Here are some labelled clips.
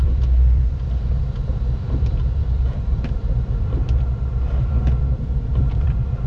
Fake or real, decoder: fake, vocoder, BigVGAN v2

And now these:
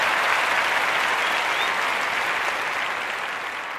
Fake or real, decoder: real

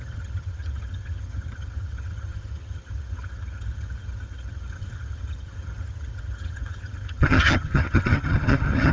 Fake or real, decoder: fake, vocoder, HiFi-GAN